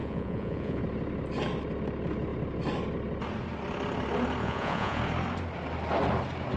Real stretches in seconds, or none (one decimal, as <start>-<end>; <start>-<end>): 0.8-4.4; 5.0-6.6